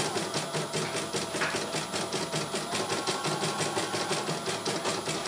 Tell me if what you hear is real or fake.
real